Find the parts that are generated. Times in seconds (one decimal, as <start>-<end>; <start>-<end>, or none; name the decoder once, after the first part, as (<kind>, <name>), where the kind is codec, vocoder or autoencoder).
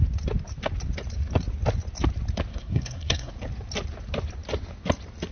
2.5-3.3 (codec, SNAC)